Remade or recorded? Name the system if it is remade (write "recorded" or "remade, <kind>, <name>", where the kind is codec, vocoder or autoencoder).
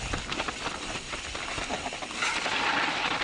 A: recorded